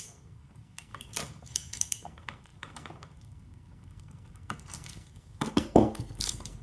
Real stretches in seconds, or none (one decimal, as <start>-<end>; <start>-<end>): none